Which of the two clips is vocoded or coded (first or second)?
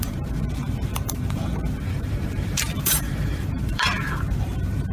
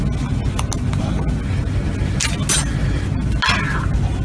first